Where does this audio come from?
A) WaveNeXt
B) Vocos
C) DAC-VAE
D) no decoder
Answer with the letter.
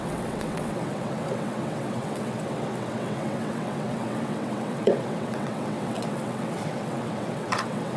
A